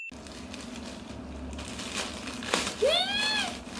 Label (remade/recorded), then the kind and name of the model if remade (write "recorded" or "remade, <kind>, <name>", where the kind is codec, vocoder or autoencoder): recorded